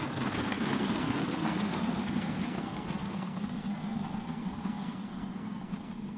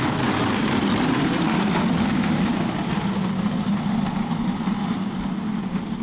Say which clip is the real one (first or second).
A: second